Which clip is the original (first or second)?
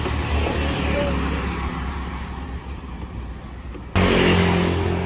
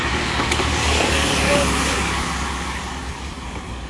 first